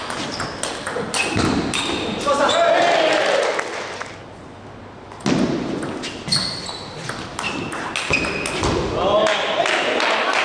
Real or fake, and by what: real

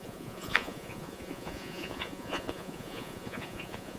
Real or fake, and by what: fake, vocoder, Vocos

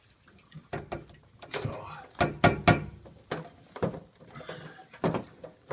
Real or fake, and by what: real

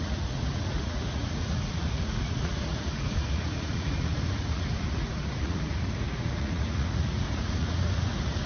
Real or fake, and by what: fake, vocoder, Vocos